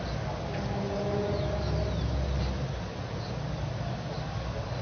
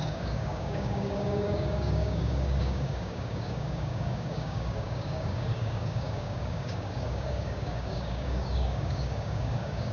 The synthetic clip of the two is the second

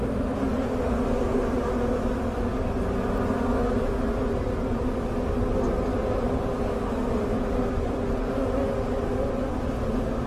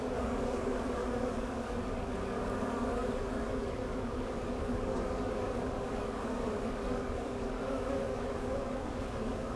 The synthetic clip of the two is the second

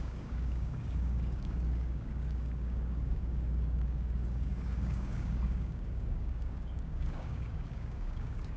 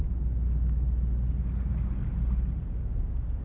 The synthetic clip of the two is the first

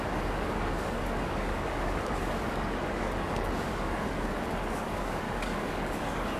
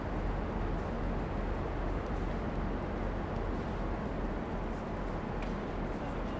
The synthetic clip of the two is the first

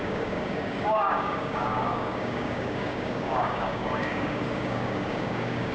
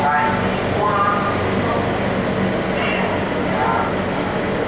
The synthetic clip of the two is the first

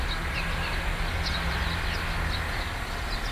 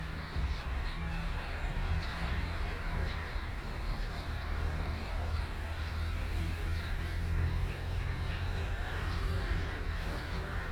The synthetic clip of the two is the second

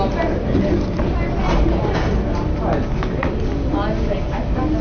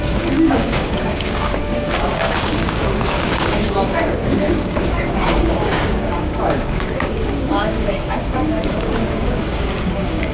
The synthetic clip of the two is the second